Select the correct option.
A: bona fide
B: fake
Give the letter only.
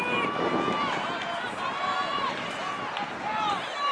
A